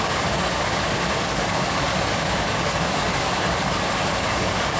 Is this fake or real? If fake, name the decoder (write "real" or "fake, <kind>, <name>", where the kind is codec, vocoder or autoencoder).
fake, codec, DAC